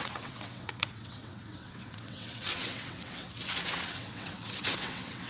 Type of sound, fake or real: fake